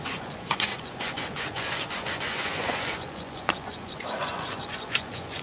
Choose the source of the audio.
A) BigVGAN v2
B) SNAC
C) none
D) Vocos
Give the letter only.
D